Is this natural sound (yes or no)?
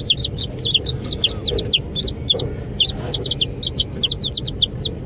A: yes